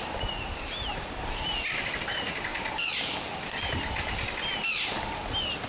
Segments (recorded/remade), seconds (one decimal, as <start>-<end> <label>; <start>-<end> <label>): 0.0-2.5 recorded; 2.5-4.7 remade; 4.7-5.7 recorded